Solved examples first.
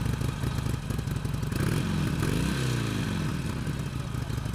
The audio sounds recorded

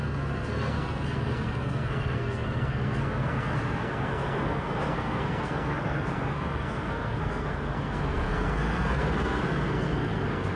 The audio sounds remade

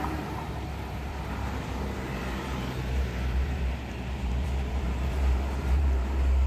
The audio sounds remade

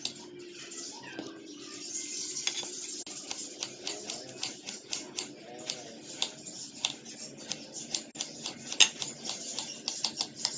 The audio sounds recorded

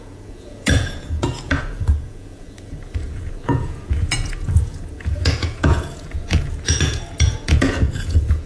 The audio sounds remade